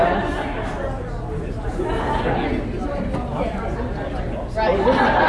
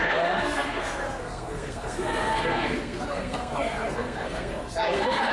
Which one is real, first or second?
first